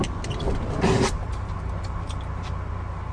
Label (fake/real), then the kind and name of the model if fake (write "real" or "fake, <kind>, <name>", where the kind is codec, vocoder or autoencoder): real